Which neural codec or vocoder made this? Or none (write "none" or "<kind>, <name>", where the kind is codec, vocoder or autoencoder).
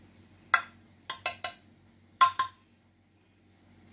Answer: none